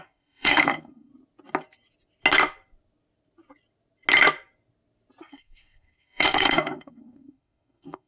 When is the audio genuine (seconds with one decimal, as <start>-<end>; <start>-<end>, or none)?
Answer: 1.1-5.2